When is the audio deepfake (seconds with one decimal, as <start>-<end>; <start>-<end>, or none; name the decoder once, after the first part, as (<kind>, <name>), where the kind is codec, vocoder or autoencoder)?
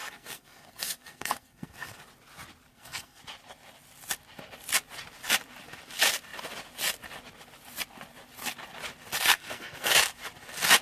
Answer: 0.0-2.0 (codec, SNAC); 2.7-3.2; 9.3-9.9